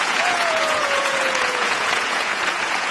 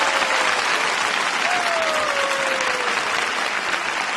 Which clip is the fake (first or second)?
first